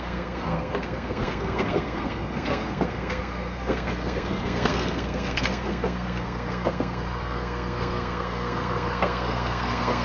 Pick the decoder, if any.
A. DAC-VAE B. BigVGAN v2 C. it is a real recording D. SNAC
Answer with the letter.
D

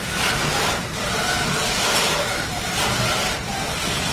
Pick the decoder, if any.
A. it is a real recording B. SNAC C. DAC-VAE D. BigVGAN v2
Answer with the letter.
A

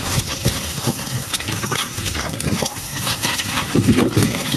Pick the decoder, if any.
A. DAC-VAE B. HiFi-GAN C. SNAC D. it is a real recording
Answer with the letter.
C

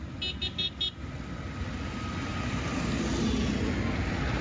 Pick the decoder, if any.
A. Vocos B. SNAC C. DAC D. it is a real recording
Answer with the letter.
D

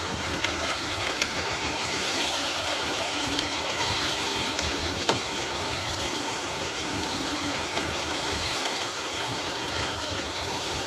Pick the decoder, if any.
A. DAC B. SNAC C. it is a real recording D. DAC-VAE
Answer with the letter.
B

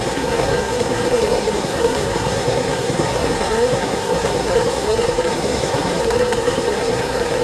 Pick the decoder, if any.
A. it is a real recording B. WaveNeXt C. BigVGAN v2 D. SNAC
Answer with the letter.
D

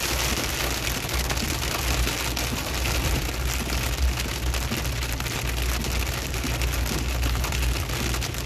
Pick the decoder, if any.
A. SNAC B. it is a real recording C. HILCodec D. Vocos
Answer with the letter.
B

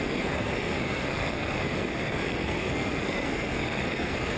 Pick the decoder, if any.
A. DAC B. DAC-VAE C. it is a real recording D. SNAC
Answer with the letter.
D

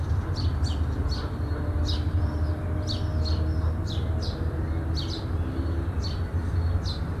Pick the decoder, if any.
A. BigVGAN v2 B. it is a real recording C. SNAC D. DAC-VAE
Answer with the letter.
B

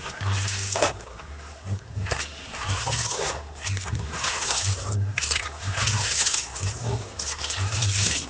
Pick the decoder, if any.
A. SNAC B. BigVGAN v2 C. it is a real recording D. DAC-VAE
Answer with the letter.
A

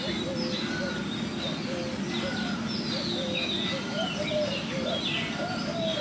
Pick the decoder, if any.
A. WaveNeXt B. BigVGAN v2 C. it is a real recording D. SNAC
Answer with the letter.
C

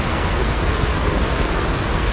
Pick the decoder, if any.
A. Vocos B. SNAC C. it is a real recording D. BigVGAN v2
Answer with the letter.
B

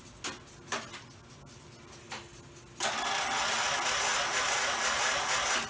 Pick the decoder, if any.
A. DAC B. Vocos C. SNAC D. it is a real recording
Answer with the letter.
D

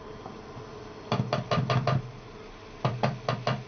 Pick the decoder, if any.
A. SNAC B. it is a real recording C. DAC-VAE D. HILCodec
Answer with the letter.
B